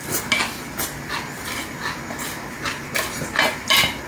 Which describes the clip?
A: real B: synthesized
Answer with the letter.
A